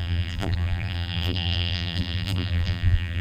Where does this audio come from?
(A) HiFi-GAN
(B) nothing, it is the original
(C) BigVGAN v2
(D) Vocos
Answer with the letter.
C